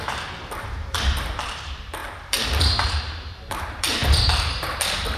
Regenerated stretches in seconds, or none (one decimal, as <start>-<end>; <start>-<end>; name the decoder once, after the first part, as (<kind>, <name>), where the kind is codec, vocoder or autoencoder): 0.0-4.0 (vocoder, BigVGAN v2); 4.6-5.2